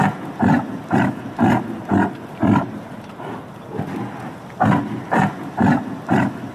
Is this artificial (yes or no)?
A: no